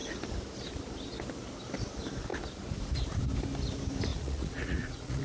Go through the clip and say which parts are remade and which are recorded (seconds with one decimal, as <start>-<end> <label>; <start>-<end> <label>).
0.0-4.1 recorded; 4.1-5.2 remade